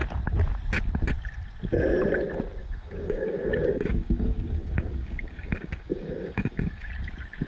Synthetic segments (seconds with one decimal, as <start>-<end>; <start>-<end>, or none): 2.6-6.9

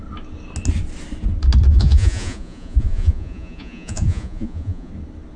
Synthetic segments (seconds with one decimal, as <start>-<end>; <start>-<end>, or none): 1.7-4.9

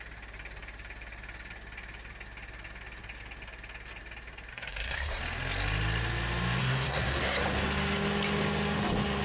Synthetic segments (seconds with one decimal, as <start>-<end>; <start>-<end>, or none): 4.5-5.2; 6.6-7.2

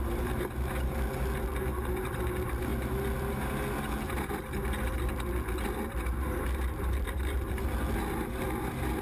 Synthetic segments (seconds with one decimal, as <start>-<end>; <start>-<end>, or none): none